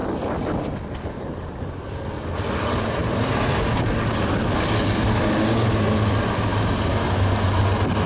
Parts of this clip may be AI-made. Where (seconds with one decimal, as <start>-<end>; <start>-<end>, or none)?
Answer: none

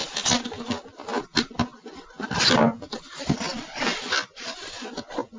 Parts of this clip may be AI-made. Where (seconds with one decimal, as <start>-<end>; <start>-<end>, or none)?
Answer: none

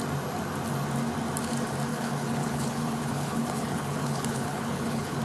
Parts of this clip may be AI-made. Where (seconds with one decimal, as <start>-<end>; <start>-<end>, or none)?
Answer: 1.9-5.2